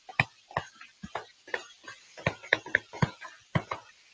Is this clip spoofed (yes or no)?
no